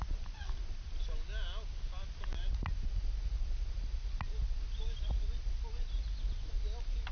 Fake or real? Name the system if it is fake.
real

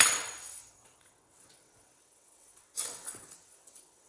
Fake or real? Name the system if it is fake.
fake, vocoder, WaveNeXt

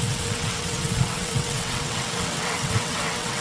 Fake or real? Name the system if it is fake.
fake, vocoder, WaveNeXt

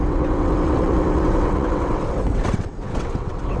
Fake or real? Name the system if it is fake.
fake, vocoder, WaveNeXt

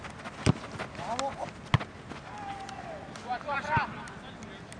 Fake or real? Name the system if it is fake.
real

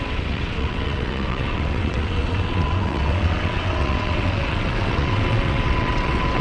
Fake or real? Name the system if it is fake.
fake, vocoder, WaveNeXt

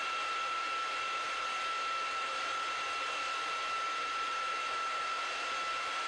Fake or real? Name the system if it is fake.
real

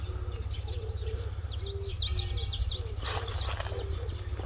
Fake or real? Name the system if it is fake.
real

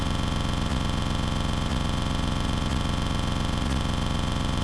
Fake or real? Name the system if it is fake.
fake, vocoder, WaveNeXt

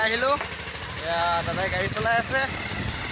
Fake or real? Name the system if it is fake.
real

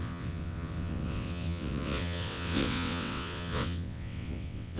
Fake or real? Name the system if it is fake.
fake, vocoder, WaveNeXt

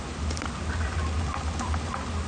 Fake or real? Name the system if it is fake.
real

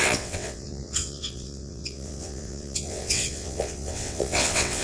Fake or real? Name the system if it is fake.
fake, vocoder, WaveNeXt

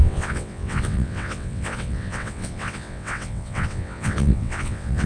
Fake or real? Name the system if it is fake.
fake, vocoder, WaveNeXt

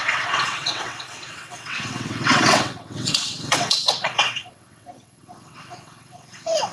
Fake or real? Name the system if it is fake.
fake, vocoder, WaveNeXt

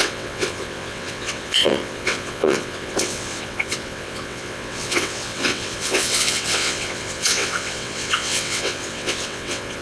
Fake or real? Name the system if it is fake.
fake, vocoder, WaveNeXt